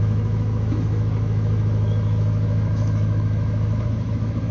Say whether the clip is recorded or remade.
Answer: remade